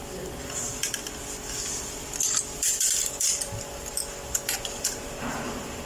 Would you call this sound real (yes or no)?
no